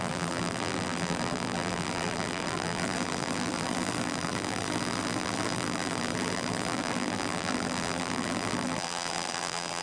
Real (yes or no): no